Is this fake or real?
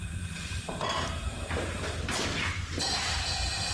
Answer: fake